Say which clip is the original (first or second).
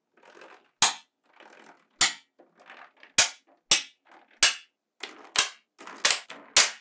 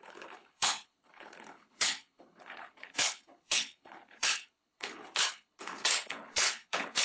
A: first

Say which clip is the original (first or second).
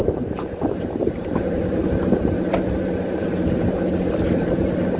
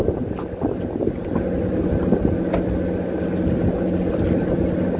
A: second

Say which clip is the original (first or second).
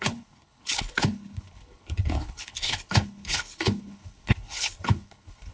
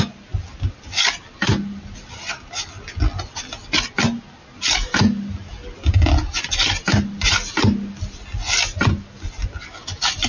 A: second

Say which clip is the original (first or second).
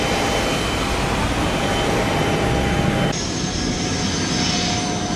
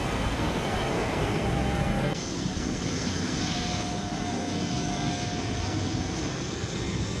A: first